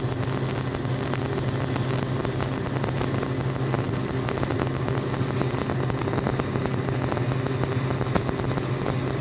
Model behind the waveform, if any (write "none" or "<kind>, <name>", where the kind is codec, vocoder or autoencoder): none